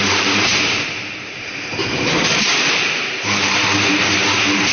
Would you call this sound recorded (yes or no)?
no